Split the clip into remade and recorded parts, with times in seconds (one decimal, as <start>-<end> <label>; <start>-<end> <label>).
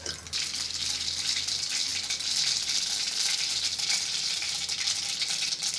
0.0-5.8 recorded